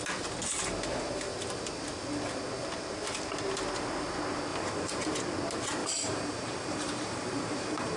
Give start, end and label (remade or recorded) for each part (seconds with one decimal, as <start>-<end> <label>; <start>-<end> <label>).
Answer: 0.0-4.5 recorded; 4.5-5.1 remade; 5.1-5.8 recorded; 5.8-8.0 remade